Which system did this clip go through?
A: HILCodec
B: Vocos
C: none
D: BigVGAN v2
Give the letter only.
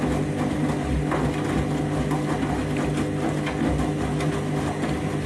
C